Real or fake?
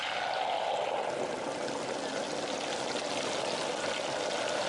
real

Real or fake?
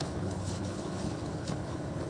fake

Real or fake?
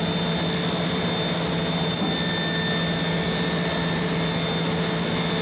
real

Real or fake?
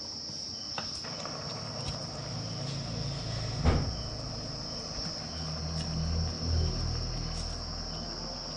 real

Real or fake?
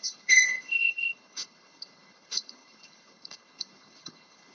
fake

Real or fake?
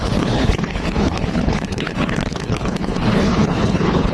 fake